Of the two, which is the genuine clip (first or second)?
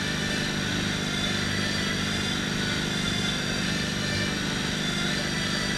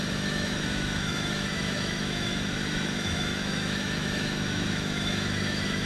first